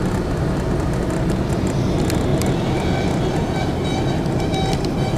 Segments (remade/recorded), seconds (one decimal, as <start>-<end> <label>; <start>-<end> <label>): 0.0-5.2 recorded